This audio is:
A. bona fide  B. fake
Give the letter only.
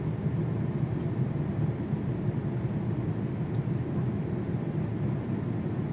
A